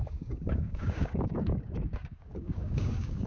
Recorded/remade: remade